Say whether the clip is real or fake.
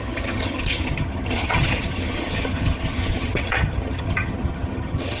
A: fake